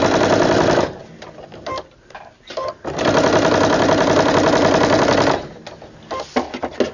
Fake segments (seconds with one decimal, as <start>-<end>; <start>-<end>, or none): none